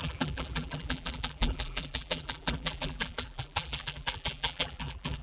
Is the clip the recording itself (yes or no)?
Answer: no